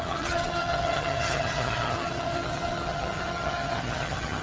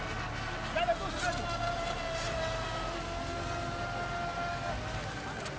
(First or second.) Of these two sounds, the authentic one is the second